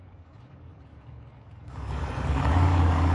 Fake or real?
fake